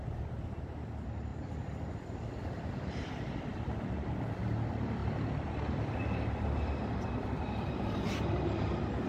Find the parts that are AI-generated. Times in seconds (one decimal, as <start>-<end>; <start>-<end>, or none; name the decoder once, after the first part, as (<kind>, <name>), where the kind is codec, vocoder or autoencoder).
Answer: 1.3-3.4 (vocoder, BigVGAN v2); 5.0-7.7